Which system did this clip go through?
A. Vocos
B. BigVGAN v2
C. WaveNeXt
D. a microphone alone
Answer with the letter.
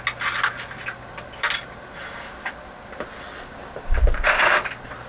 D